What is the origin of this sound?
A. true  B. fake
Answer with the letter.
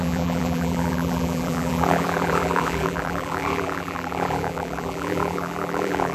B